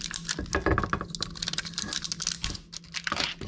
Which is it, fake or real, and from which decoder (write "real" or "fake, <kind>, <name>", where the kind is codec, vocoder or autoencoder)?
real